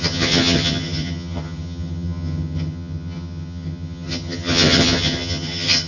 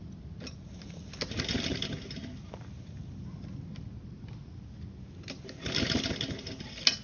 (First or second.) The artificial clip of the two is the first